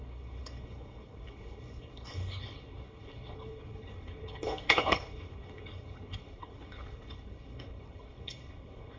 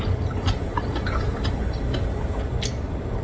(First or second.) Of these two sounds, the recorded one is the second